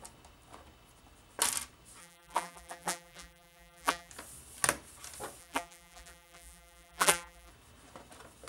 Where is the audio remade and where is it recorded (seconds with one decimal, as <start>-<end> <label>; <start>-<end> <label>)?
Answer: 0.0-2.0 recorded; 2.0-4.1 remade; 4.1-5.4 recorded; 5.4-7.5 remade; 7.5-8.5 recorded